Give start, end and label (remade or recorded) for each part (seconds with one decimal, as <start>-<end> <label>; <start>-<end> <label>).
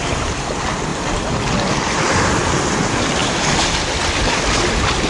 0.0-5.1 recorded